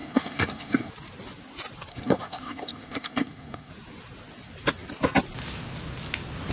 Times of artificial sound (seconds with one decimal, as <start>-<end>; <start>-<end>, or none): 0.0-0.9; 1.9-3.7